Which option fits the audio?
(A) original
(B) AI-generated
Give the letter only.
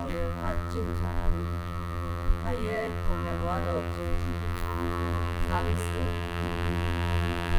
B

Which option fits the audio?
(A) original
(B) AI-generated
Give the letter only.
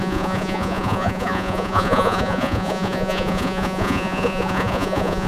B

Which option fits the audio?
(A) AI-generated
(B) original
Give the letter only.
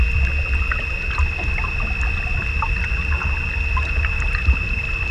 B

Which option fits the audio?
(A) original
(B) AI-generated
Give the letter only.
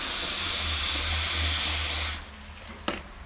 A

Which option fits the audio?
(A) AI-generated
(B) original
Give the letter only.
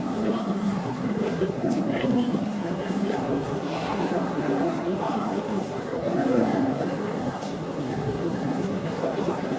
A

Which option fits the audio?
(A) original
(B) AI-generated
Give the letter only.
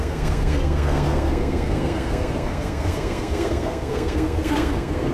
B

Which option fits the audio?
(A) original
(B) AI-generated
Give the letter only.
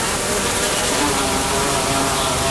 A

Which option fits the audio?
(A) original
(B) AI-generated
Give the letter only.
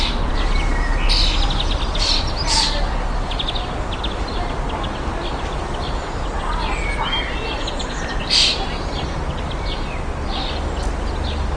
A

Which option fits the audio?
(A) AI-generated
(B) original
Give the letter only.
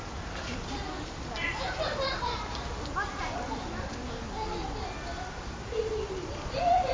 B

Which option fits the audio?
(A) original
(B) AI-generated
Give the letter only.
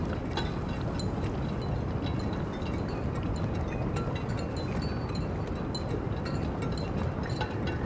A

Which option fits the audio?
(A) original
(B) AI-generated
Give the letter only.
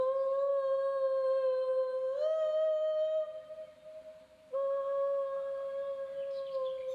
A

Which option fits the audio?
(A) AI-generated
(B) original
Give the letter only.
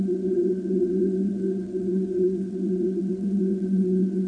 A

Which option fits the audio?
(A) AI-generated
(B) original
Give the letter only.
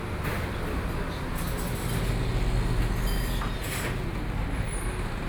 B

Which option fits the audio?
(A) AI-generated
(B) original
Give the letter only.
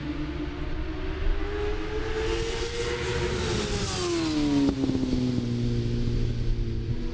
B